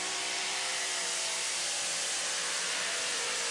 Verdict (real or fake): fake